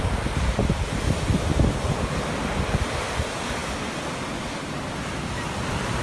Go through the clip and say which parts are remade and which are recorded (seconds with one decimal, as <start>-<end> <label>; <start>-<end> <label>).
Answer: 0.0-6.0 recorded